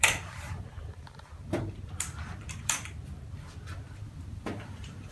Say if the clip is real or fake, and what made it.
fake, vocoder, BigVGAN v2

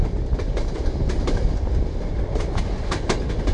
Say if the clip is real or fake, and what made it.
real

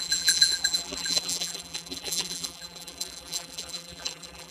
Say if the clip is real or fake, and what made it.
fake, vocoder, BigVGAN v2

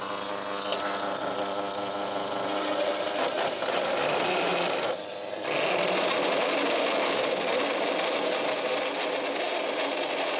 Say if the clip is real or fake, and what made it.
real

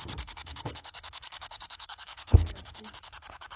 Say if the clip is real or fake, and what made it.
fake, codec, SNAC